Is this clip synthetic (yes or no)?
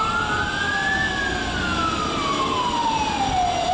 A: no